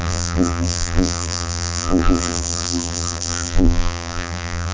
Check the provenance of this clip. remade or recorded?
remade